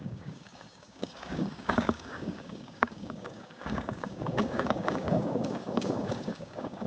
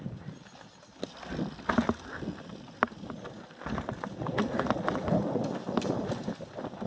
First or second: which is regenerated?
first